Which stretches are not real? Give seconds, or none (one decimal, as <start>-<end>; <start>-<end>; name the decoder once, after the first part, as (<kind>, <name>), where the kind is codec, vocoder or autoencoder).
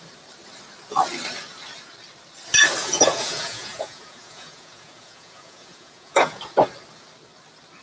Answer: 2.8-6.4 (vocoder, Vocos)